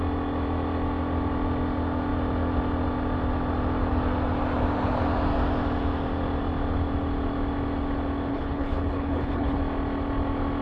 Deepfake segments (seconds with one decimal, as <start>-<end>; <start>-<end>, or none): 8.3-9.6